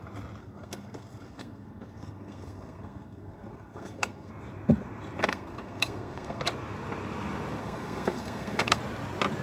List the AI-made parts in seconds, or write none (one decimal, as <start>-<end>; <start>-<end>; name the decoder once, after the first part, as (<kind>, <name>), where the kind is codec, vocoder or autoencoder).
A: 0.4-4.3 (codec, SNAC); 5.2-6.4; 7.6-8.8